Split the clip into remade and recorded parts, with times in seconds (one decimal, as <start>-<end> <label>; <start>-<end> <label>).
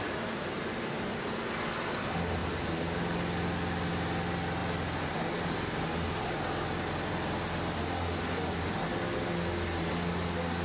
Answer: 0.0-10.6 recorded